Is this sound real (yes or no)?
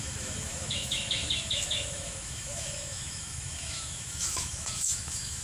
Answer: no